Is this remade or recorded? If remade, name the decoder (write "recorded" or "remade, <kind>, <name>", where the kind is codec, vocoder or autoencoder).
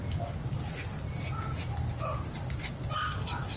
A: recorded